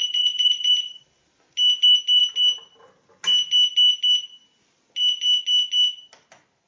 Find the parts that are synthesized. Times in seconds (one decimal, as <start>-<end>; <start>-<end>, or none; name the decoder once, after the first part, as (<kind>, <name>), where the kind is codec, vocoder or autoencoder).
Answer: 0.0-1.0 (vocoder, Vocos)